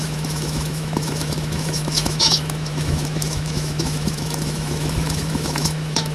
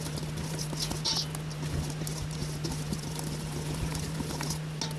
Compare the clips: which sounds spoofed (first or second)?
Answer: first